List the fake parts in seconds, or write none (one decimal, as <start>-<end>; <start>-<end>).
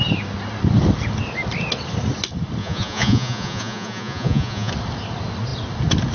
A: 2.6-4.7